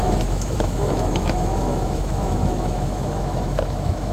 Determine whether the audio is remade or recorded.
remade